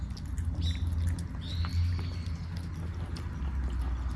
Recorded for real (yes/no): yes